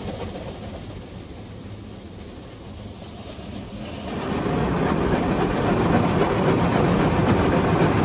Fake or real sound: real